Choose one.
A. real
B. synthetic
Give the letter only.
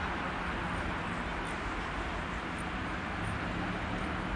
A